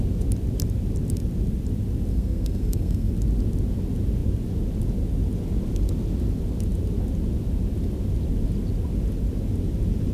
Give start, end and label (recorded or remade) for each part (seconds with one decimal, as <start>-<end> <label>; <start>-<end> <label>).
0.0-2.1 recorded; 2.1-3.1 remade; 3.1-10.1 recorded